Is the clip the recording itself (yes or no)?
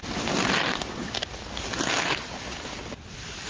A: no